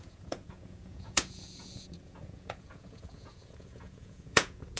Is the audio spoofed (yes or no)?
yes